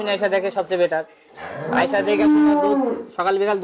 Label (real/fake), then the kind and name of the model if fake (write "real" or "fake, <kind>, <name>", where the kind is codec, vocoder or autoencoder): real